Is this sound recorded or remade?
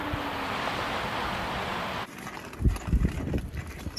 recorded